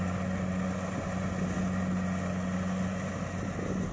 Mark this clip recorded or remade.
recorded